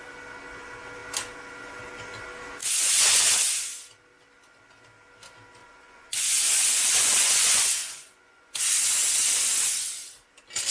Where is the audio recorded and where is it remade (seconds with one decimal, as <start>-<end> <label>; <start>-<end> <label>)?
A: 0.0-2.6 recorded; 2.6-3.2 remade; 3.2-5.6 recorded; 5.6-8.6 remade; 8.6-10.7 recorded